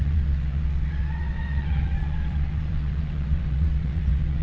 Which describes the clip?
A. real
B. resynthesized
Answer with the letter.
B